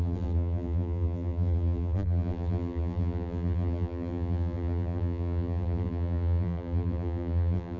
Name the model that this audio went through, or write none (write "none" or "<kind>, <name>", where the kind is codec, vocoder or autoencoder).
vocoder, BigVGAN v2